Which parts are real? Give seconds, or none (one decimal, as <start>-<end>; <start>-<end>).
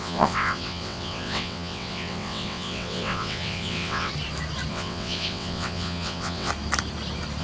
4.1-4.7; 6.5-7.4